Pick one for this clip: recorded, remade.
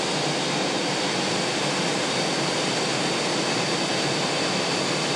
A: recorded